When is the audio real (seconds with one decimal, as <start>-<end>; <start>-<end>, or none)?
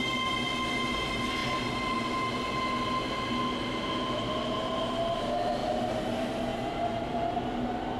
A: 0.0-1.4; 2.0-6.5; 7.2-8.0